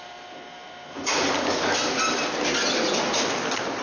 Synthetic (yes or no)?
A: yes